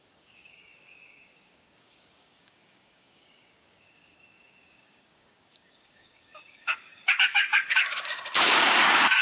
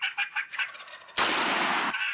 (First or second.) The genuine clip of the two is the second